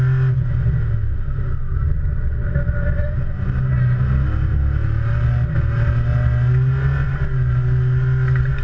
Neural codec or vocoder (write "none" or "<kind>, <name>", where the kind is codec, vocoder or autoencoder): none